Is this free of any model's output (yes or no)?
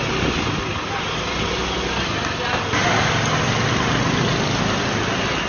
yes